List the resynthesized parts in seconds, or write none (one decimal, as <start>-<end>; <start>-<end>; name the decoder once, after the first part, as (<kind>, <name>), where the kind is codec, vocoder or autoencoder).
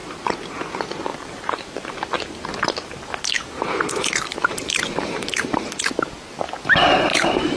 0.0-0.5 (vocoder, BigVGAN v2); 1.1-5.7; 7.1-7.6